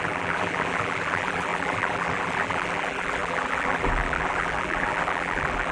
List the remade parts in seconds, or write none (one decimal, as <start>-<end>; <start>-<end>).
0.0-5.7